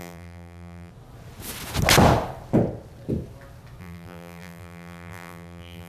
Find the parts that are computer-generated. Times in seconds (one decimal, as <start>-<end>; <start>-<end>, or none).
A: 0.0-0.9; 3.8-5.9